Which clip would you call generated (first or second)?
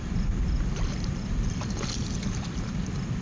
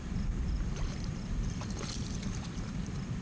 second